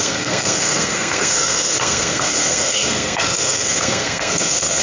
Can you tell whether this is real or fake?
fake